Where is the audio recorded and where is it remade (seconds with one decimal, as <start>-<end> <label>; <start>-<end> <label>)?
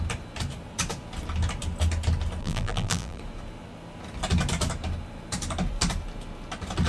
0.0-2.4 recorded; 2.4-3.2 remade; 3.2-6.9 recorded